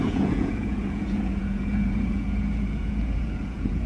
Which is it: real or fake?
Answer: fake